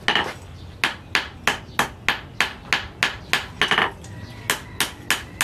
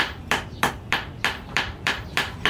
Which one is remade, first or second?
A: second